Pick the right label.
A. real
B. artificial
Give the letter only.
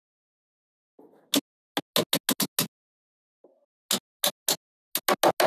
A